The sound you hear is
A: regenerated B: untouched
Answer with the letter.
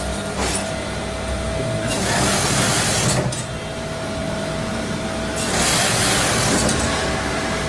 B